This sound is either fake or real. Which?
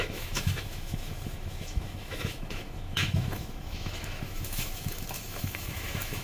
fake